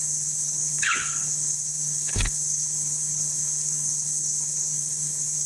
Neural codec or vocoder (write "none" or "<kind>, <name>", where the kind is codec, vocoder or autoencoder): codec, HILCodec